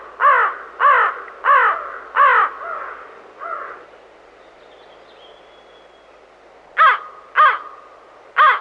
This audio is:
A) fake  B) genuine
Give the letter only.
B